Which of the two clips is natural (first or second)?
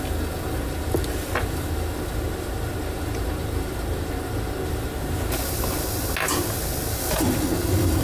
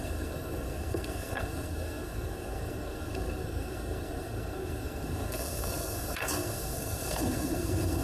first